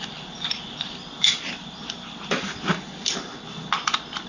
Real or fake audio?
fake